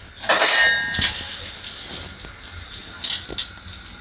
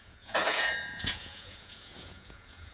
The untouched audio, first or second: first